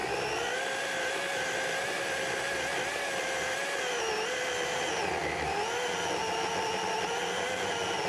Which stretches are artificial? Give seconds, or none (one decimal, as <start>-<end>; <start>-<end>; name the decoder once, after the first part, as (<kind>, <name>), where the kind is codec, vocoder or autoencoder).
none